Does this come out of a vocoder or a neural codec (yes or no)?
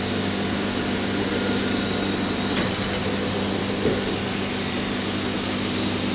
no